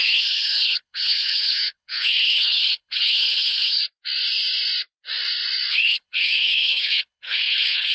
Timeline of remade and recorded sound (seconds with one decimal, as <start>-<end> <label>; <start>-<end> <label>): 0.0-3.8 remade; 3.8-5.7 recorded; 5.7-7.9 remade